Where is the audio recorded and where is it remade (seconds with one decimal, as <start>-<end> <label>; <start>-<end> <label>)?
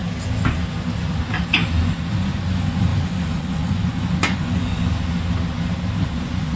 0.0-1.8 recorded; 1.8-4.7 remade; 4.7-6.0 recorded; 6.0-6.6 remade